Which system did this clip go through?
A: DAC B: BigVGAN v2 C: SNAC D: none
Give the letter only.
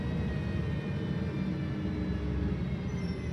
D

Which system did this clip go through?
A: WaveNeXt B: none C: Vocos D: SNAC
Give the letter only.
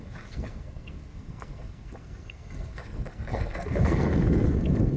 D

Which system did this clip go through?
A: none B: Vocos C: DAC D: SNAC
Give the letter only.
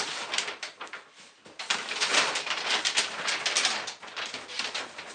A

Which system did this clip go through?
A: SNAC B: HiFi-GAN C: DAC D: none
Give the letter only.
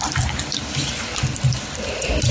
D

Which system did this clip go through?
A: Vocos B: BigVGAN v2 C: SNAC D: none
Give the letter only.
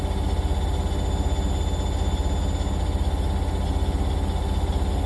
D